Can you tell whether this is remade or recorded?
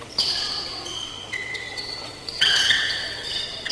remade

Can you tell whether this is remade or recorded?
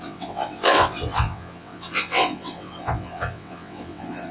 remade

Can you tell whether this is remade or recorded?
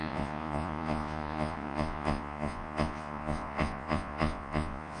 remade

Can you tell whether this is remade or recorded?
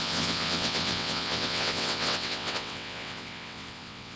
remade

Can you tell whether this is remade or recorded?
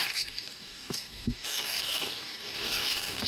remade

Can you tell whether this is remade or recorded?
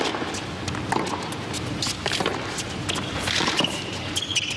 recorded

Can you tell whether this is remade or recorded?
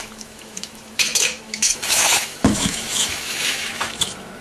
remade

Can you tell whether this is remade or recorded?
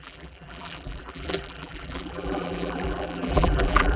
remade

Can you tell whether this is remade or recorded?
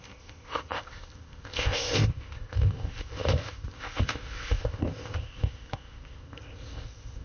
remade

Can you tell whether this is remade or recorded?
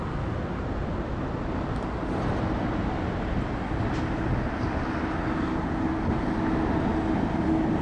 recorded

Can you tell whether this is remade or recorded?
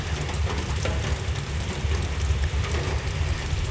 recorded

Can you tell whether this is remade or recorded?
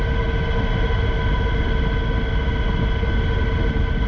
recorded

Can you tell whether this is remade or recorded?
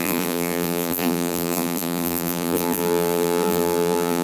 remade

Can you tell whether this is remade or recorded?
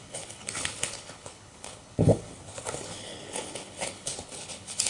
remade